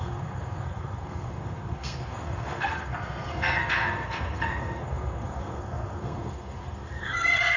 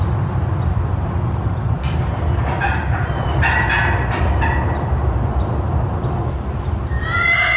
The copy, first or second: first